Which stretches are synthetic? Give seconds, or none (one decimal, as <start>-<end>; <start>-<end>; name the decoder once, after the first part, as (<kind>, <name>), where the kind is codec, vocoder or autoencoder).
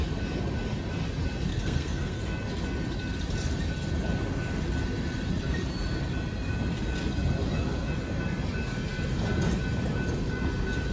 1.5-2.2 (codec, SNAC)